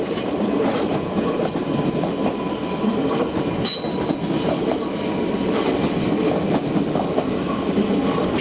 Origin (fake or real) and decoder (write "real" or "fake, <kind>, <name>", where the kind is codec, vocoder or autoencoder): real